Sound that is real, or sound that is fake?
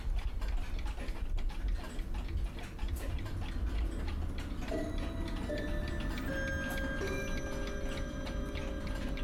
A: real